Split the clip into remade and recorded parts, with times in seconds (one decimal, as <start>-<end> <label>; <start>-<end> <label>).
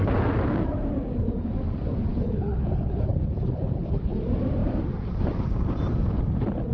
0.0-2.1 recorded; 2.1-4.1 remade; 4.1-6.7 recorded